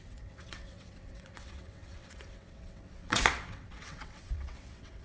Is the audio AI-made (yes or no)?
yes